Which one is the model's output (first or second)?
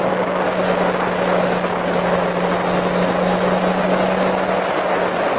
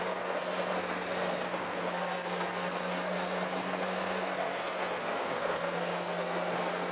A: second